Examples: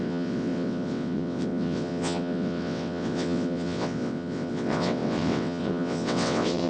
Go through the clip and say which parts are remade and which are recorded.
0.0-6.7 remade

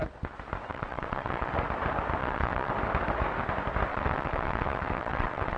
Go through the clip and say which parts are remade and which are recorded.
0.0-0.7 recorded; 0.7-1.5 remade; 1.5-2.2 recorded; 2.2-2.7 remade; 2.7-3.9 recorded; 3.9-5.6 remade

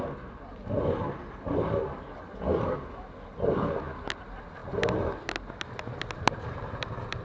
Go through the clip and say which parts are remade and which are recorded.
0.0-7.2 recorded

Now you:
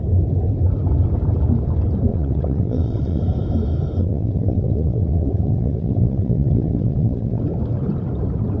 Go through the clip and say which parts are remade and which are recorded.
0.0-2.1 recorded; 2.1-3.2 remade; 3.2-4.0 recorded; 4.0-7.4 remade; 7.4-8.6 recorded

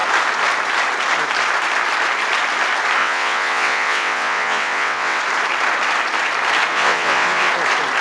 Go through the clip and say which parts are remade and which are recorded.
0.0-3.0 recorded; 3.0-5.2 remade; 5.2-6.7 recorded; 6.7-7.5 remade; 7.5-8.0 recorded

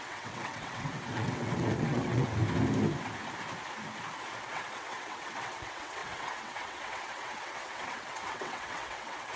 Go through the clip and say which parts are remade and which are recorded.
0.0-2.4 remade; 2.4-4.4 recorded; 4.4-9.4 remade